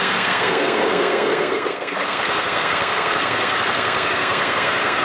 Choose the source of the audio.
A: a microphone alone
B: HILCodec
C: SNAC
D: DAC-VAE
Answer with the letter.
C